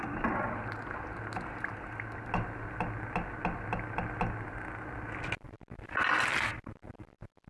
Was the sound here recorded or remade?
recorded